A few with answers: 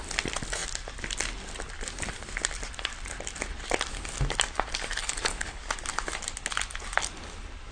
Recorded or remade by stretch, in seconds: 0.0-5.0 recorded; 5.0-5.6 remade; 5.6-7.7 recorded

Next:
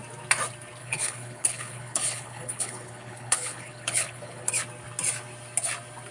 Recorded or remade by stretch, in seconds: 0.0-0.8 recorded; 0.8-4.5 remade; 4.5-6.1 recorded

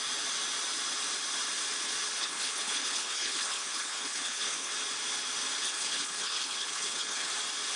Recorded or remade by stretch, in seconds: 0.0-2.2 recorded; 2.2-4.7 remade; 4.7-5.6 recorded; 5.6-7.3 remade; 7.3-7.8 recorded

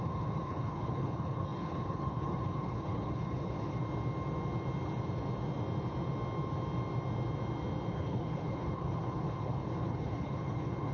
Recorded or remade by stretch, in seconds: 0.0-3.8 remade; 3.8-7.9 recorded; 7.9-10.9 remade

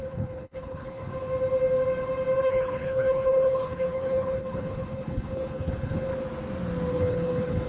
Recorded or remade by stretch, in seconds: 0.0-1.1 remade; 1.1-2.4 recorded; 2.4-6.1 remade; 6.1-6.9 recorded; 6.9-7.7 remade